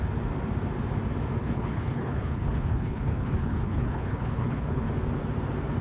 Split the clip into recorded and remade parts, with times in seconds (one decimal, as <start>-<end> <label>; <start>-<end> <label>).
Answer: 0.0-1.4 recorded; 1.4-4.9 remade; 4.9-5.8 recorded